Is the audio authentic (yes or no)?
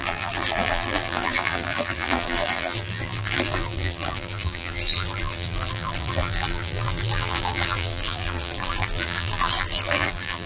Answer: no